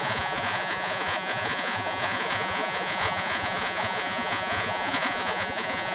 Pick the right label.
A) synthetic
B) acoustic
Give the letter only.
A